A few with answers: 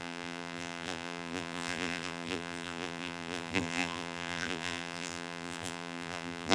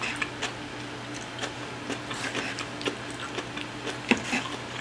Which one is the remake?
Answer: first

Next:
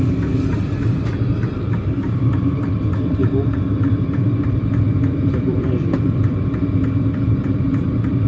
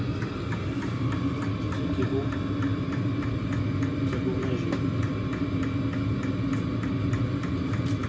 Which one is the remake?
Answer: first